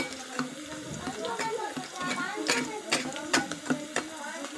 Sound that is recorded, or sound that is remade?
recorded